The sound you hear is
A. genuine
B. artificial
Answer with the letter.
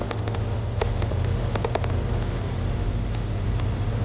A